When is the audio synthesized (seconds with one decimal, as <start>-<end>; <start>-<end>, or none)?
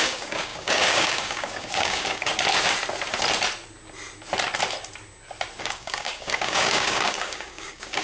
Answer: 0.0-2.3; 5.6-8.0